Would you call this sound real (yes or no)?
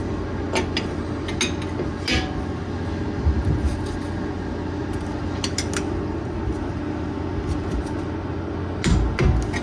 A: yes